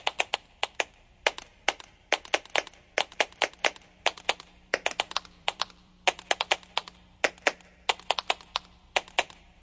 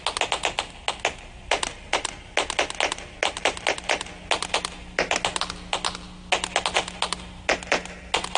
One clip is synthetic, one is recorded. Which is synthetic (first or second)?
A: first